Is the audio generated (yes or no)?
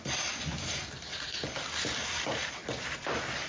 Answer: no